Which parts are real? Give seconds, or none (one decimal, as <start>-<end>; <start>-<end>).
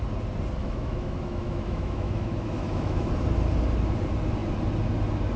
0.0-0.6; 3.1-5.4